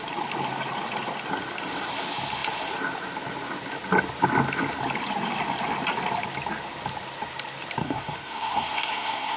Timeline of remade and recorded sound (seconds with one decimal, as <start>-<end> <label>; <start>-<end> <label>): 0.0-7.8 recorded; 7.8-9.4 remade